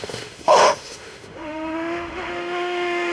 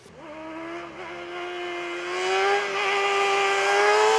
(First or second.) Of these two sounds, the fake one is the first